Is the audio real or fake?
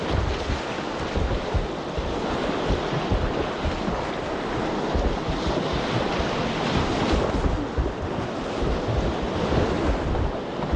real